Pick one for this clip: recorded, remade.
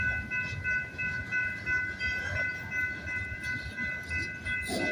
recorded